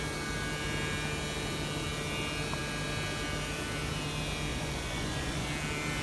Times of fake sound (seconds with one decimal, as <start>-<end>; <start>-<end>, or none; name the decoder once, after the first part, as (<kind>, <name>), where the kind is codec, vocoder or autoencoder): 4.5-5.5 (vocoder, Vocos)

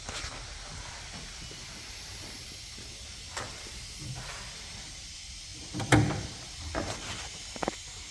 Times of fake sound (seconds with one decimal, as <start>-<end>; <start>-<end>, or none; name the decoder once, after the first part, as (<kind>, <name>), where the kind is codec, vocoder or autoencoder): none

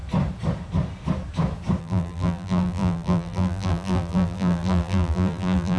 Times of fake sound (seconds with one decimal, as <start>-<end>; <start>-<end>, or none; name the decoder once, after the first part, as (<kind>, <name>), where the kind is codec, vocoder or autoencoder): 1.8-5.8 (vocoder, BigVGAN v2)